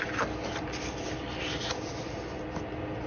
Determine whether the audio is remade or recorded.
recorded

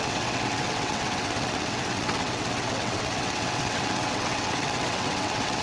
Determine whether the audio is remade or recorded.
remade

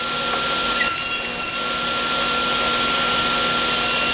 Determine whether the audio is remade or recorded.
recorded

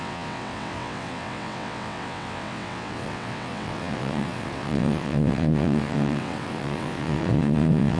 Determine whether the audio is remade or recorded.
remade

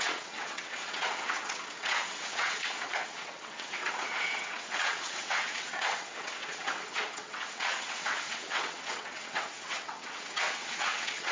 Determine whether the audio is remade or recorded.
remade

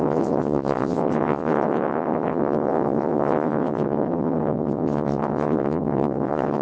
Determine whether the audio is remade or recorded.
remade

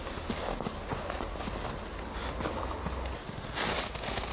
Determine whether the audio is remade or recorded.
recorded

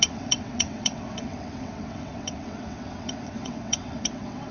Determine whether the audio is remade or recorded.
remade